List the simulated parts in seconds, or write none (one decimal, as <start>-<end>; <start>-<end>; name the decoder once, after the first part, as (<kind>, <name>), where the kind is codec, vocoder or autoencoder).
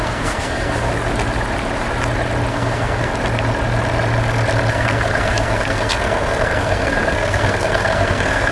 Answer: 0.0-0.9 (codec, SNAC); 2.5-3.1; 4.7-8.5